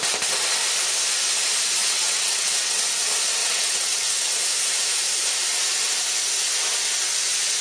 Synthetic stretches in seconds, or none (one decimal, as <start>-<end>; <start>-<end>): 1.8-2.8; 3.4-4.3